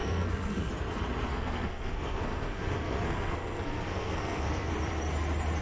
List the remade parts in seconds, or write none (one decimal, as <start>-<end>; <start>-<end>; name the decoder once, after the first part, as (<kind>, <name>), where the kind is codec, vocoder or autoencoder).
0.0-0.7 (codec, SNAC); 1.3-4.7